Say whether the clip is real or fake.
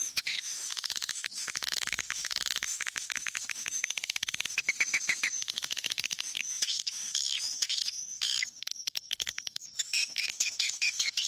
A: fake